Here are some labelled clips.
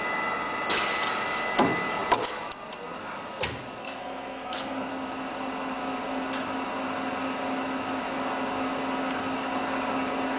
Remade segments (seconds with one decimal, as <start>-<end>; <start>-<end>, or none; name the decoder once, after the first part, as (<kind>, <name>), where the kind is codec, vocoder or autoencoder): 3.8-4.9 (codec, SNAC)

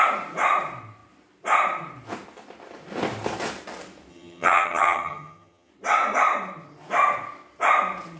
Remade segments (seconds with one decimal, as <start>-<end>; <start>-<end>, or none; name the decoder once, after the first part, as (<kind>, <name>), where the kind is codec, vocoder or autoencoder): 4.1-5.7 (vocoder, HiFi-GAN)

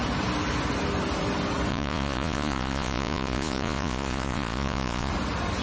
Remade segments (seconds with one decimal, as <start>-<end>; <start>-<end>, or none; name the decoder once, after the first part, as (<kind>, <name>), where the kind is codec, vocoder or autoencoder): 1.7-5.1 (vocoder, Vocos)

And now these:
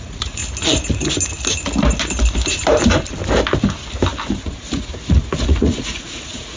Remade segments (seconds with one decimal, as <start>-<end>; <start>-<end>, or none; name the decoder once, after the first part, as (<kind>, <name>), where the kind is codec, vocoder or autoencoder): 0.0-0.4 (vocoder, Vocos); 4.4-6.6